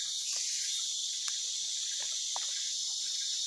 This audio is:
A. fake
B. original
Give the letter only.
B